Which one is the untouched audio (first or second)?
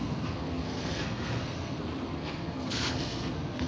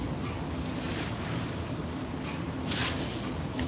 second